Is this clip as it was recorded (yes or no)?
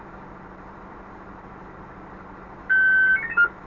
yes